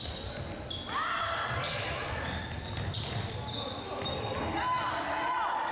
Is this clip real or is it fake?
real